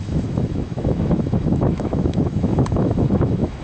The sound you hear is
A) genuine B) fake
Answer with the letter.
B